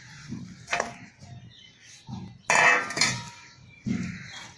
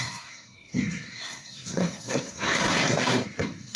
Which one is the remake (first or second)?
second